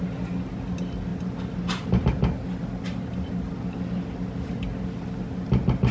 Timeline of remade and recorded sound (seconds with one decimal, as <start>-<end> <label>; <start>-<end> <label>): 0.0-5.9 recorded